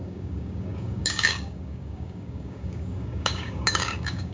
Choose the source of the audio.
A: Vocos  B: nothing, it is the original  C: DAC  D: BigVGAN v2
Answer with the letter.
C